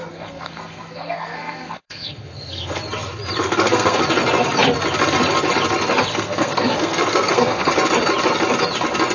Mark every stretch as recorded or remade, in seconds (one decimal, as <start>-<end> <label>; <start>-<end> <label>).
0.0-2.8 remade; 2.8-3.4 recorded; 3.4-4.0 remade; 4.0-6.1 recorded; 6.1-7.7 remade; 7.7-9.1 recorded